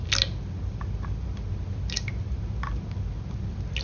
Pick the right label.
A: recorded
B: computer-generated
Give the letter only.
A